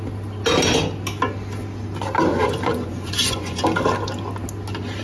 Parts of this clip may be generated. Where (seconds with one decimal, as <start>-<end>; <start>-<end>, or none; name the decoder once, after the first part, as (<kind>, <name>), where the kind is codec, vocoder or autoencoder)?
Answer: 2.3-3.6 (vocoder, Vocos)